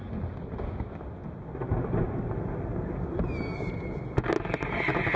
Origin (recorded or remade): recorded